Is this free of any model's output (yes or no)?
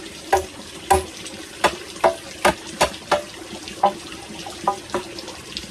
yes